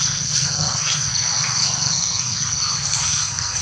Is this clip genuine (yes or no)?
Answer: no